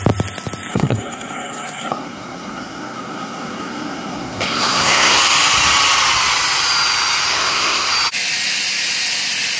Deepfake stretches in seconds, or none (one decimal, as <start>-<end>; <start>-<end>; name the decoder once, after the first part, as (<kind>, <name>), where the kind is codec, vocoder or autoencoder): 0.7-5.2 (codec, SNAC); 7.3-7.9